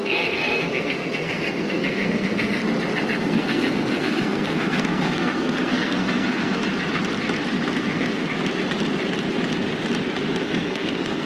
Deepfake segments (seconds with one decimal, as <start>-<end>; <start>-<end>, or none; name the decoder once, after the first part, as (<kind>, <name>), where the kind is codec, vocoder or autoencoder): 0.0-2.6 (codec, SNAC); 3.2-6.6; 7.8-8.3; 10.4-11.3